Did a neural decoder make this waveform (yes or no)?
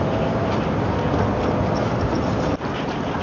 no